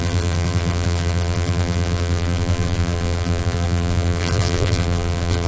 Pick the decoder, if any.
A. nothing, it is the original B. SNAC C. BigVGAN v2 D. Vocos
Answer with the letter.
C